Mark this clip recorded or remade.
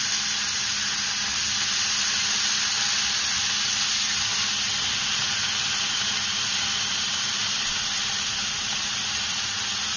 recorded